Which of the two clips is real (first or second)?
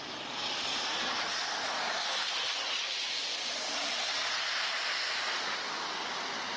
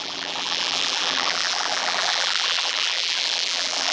first